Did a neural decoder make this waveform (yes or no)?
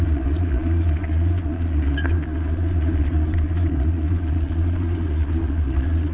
yes